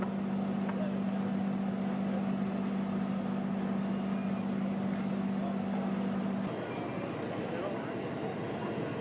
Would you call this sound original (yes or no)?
yes